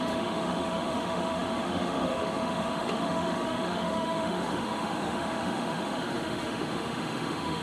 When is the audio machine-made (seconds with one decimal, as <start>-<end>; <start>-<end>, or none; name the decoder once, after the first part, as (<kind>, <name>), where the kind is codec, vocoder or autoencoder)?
0.0-7.6 (autoencoder, DAC-VAE)